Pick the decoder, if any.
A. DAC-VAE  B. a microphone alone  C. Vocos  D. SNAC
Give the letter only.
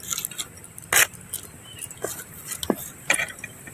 B